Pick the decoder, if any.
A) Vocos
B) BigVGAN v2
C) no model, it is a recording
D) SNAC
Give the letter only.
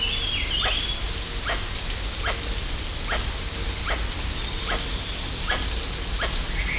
C